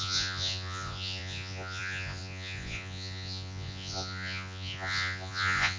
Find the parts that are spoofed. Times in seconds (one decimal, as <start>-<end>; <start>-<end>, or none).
0.0-5.8